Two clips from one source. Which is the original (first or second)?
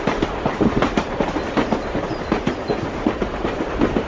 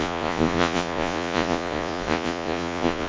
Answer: first